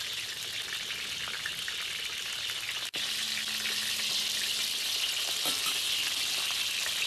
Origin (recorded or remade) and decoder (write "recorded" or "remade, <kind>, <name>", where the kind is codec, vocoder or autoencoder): recorded